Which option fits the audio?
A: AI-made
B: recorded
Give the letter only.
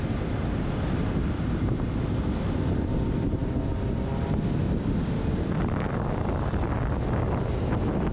B